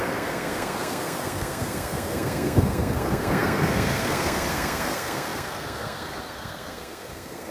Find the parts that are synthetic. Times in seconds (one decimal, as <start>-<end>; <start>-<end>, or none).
0.0-7.5